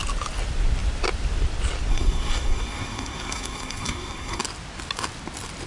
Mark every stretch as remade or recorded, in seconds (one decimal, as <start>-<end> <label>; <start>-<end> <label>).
0.0-1.9 recorded; 1.9-4.4 remade; 4.4-5.7 recorded